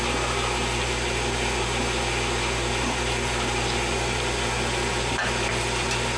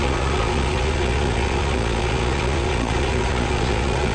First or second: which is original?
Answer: first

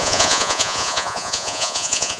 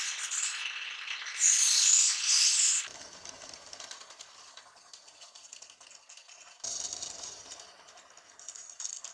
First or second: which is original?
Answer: second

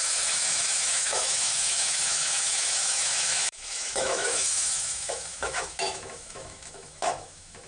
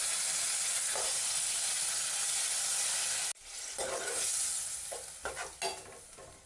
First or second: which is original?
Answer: second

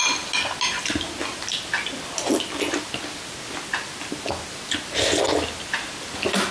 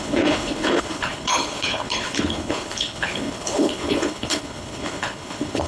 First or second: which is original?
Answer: first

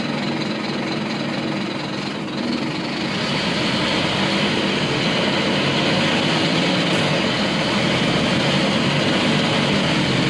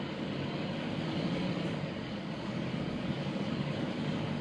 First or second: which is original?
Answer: first